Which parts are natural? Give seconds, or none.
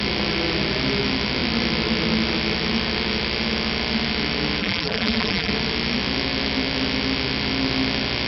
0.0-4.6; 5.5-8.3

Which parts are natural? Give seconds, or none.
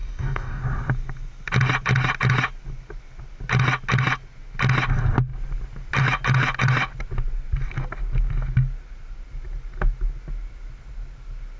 0.6-11.6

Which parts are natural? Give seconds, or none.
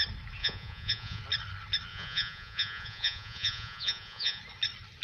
0.0-0.4; 1.2-1.9; 4.4-5.0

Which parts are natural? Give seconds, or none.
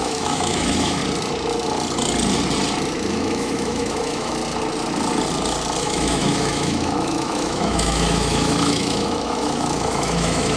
1.0-3.1; 4.4-5.8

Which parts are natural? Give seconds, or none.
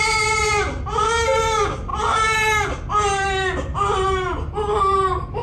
0.0-5.4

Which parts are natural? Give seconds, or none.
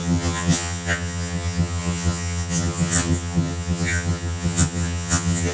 none